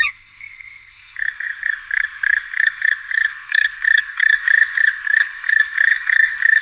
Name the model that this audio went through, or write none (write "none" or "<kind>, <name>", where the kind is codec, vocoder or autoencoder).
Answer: codec, SNAC